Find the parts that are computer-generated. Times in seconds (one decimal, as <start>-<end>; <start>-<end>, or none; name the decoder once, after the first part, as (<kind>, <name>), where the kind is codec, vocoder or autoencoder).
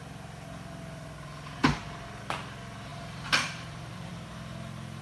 2.9-4.1 (vocoder, BigVGAN v2)